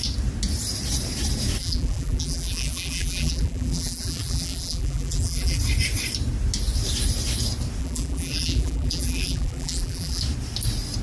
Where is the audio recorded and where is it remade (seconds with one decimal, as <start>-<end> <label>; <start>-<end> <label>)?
0.0-1.6 recorded; 1.6-5.6 remade; 5.6-7.8 recorded; 7.8-10.2 remade; 10.2-11.0 recorded